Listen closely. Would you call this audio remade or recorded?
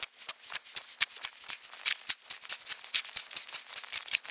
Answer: recorded